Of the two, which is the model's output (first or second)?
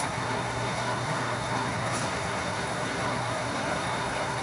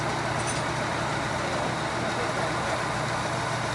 first